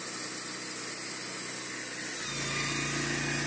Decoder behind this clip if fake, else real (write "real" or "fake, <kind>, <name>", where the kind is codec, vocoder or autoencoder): real